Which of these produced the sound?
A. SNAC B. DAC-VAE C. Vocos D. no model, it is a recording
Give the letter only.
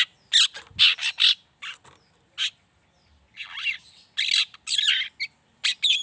D